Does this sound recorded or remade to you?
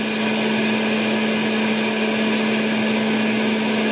recorded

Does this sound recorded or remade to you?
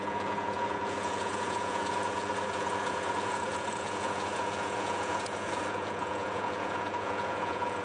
remade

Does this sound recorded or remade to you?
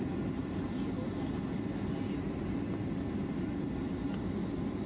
recorded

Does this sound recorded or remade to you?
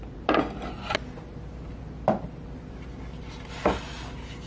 recorded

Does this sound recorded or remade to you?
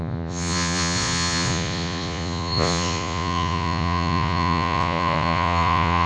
remade